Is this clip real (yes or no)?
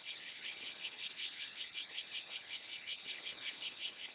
no